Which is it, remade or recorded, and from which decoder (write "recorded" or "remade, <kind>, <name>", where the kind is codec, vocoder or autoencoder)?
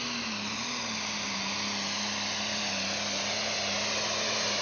recorded